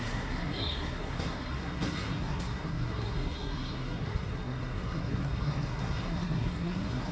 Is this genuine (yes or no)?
no